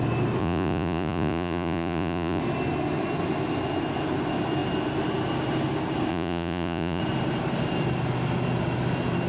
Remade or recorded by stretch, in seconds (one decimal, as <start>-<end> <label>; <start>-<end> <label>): 0.0-0.4 recorded; 0.4-2.4 remade; 2.4-6.1 recorded; 6.1-7.0 remade; 7.0-9.3 recorded